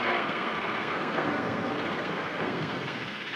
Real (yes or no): no